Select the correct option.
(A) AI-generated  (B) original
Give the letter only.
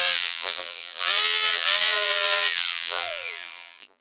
A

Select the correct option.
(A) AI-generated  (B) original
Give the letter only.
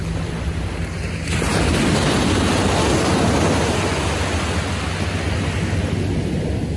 B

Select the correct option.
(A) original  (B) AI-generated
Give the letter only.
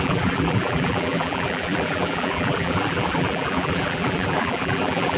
B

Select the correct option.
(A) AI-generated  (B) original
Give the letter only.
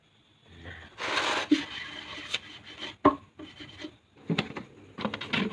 B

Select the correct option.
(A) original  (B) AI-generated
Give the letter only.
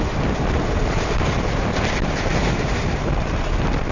B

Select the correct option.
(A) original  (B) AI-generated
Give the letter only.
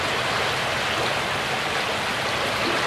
A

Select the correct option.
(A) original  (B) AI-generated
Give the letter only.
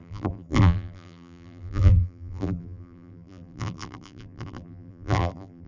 B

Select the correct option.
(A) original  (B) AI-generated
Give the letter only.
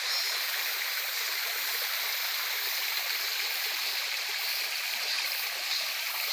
B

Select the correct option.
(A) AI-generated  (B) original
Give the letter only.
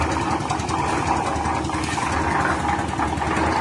B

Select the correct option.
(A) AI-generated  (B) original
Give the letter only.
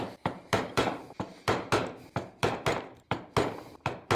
A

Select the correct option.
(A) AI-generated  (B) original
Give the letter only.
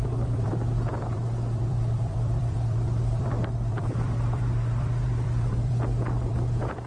A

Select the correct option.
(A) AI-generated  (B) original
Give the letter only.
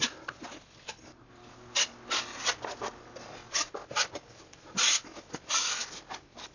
B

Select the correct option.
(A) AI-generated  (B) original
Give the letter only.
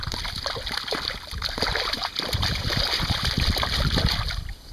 A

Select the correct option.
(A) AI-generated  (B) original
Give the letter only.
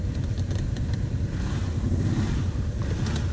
B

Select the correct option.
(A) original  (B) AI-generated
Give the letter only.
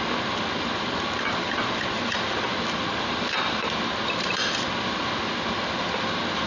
B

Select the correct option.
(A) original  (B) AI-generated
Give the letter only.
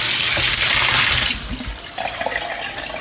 A